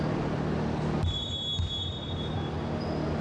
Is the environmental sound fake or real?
real